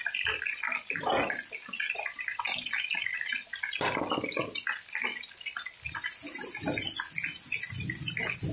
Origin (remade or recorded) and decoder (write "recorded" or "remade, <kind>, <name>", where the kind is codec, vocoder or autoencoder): recorded